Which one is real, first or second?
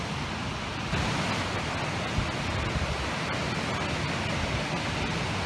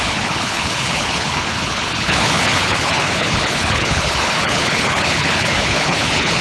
first